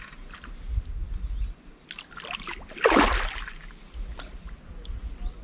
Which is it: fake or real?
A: real